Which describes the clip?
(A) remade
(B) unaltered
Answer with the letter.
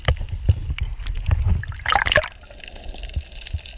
B